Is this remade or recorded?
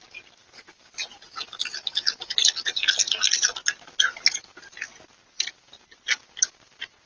recorded